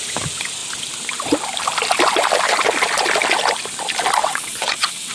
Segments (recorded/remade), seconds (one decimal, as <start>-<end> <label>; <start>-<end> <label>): 0.0-4.2 recorded; 4.2-5.1 remade